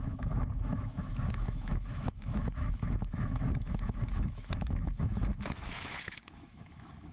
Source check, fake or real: fake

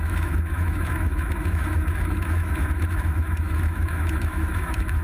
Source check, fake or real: fake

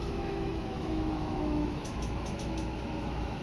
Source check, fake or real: fake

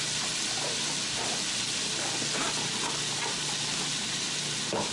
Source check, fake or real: real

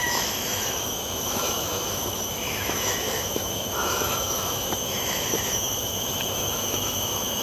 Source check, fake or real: fake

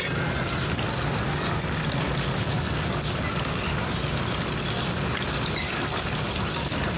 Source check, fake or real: real